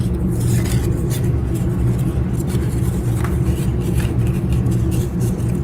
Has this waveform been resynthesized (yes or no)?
no